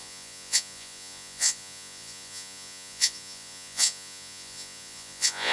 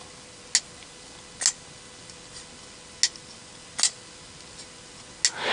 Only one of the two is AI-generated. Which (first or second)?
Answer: first